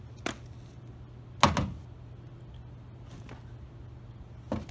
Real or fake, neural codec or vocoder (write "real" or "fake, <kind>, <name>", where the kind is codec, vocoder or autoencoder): real